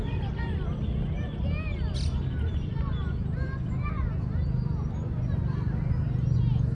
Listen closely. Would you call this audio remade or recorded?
recorded